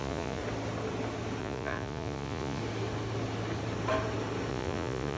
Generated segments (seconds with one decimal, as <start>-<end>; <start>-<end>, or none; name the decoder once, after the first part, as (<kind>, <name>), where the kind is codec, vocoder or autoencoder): 0.0-0.4 (vocoder, Vocos); 1.4-2.6; 4.5-5.2